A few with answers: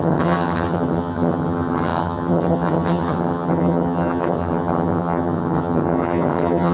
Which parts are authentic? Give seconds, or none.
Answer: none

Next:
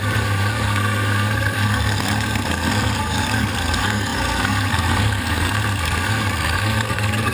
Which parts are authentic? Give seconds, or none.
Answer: none